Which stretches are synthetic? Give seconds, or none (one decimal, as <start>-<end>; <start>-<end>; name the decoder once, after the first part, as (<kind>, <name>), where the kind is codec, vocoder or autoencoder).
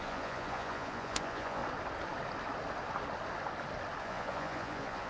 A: 0.0-1.6 (vocoder, Vocos); 4.0-5.1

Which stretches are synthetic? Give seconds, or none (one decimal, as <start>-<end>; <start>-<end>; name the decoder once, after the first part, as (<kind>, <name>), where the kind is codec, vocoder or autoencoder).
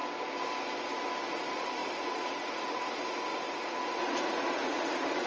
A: 1.2-5.3 (vocoder, Vocos)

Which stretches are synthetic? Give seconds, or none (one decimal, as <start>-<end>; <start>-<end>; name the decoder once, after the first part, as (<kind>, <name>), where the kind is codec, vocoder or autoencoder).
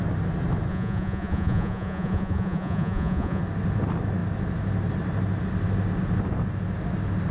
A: 0.7-3.4 (vocoder, Vocos)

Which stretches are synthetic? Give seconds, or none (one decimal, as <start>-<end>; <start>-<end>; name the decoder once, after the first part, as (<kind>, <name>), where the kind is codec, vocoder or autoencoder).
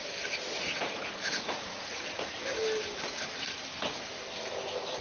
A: 0.6-1.9 (vocoder, Vocos)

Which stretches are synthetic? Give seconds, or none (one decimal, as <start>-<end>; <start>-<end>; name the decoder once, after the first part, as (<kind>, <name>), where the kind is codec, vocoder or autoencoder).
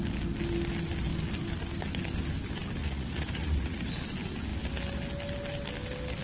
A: 2.8-3.9 (vocoder, Vocos)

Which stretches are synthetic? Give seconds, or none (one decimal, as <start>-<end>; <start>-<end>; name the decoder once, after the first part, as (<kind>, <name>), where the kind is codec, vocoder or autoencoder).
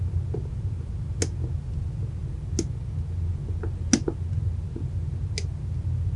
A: none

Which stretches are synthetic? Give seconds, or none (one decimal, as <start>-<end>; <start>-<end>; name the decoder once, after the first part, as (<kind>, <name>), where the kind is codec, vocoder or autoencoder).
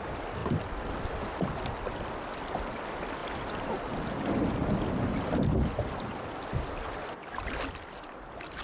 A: none